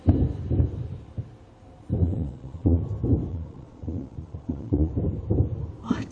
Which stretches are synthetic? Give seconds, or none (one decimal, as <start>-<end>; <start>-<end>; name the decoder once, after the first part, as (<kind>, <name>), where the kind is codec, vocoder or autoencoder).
2.0-2.8 (vocoder, Vocos); 3.3-4.9